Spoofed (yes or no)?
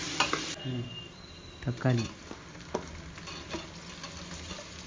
no